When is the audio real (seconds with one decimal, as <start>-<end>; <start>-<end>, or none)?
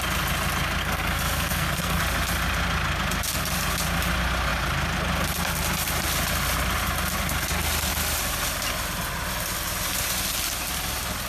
0.0-0.8; 2.0-11.3